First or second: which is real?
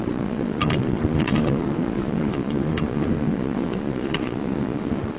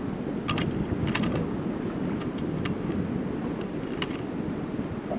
second